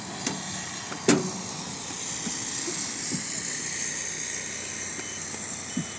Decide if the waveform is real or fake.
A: real